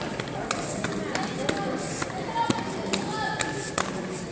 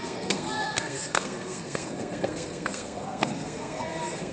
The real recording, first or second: first